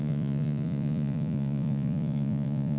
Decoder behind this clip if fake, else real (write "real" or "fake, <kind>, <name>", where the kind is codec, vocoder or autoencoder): fake, vocoder, Vocos